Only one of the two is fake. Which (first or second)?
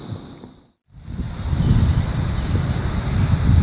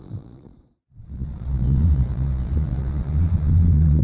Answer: second